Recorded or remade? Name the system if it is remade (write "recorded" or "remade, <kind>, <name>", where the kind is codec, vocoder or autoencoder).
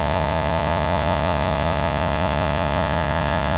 remade, vocoder, Vocos